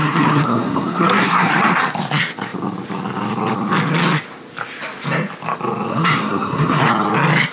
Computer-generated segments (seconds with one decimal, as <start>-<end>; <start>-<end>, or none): 0.0-1.5; 5.9-6.8